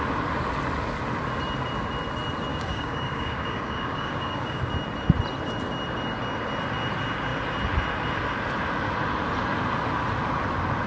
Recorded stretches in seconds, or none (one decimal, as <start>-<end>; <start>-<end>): 0.0-2.5; 4.6-10.9